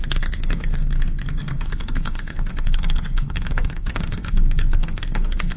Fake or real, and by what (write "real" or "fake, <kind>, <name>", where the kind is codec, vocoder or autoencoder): fake, codec, SNAC